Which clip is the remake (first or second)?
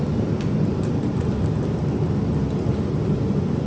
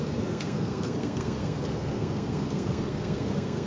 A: second